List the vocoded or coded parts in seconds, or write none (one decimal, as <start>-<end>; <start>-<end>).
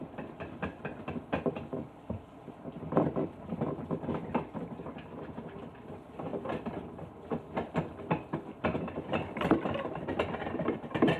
none